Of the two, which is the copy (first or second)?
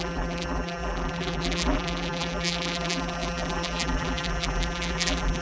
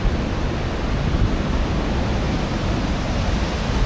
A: first